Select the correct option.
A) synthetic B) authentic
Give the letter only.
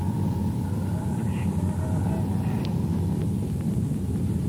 A